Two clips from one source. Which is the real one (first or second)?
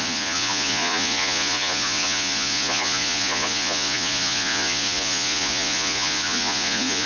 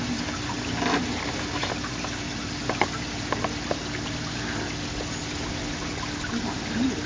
second